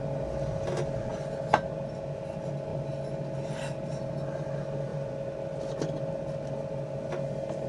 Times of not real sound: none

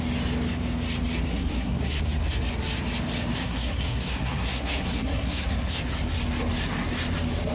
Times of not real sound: 1.3-2.0; 3.4-5.7

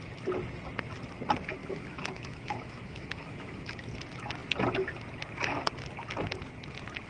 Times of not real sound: 1.6-3.7

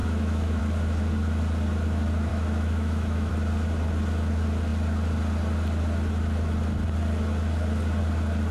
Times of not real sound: 0.0-0.6; 2.3-3.3

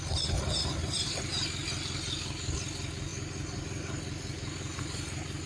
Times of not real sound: 0.7-1.3

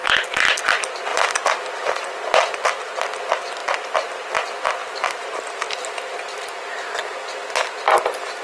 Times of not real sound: none

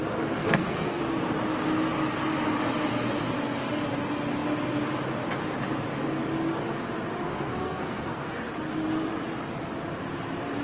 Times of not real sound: 0.4-1.0; 7.2-8.4

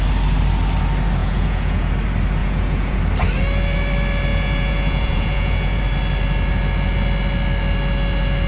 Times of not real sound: 1.2-1.9; 2.4-3.0; 4.3-5.8